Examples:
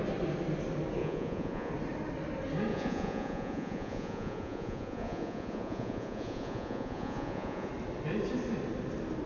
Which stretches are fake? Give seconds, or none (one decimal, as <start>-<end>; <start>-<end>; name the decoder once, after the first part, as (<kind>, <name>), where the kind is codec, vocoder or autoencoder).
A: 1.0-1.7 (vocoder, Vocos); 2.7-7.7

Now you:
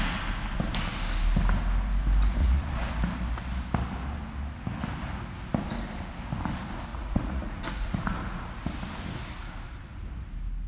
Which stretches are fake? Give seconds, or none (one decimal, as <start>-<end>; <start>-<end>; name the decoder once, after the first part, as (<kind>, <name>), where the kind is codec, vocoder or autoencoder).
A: 2.4-2.9 (vocoder, Vocos); 6.9-8.4

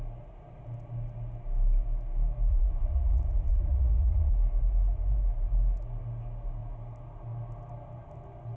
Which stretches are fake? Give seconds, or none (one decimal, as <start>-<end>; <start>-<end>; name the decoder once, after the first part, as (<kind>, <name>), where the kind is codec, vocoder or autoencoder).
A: 2.5-4.3 (vocoder, Vocos)